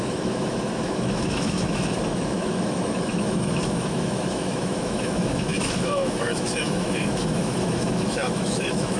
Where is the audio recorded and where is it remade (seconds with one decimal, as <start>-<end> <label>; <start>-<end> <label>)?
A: 0.0-9.0 remade